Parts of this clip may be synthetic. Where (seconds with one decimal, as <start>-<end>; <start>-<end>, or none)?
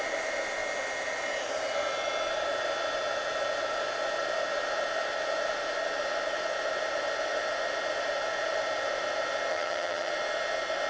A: 9.5-10.1